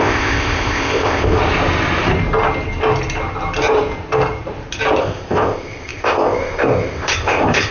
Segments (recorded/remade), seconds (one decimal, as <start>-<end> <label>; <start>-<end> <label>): 0.0-1.4 remade; 1.4-5.0 recorded; 5.0-7.7 remade